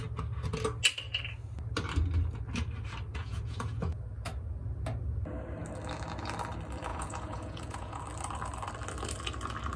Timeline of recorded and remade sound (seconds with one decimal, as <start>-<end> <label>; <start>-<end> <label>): 0.0-3.2 recorded; 3.2-4.0 remade; 4.0-6.9 recorded; 6.9-8.0 remade; 8.0-9.8 recorded